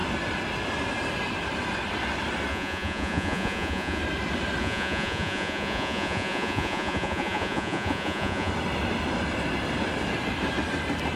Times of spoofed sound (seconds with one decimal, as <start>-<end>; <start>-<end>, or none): 2.5-4.0; 4.6-8.5